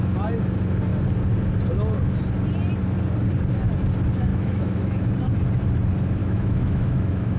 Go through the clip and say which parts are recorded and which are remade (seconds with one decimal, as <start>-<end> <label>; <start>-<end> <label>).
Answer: 0.0-4.3 recorded; 4.3-5.0 remade; 5.0-6.2 recorded; 6.2-7.4 remade